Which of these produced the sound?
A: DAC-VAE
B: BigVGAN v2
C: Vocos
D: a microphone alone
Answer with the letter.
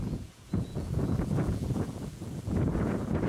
C